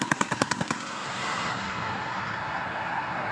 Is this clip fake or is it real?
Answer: fake